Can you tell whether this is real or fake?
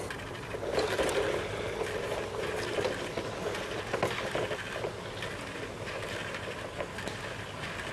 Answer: real